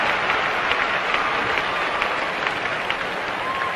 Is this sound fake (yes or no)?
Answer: no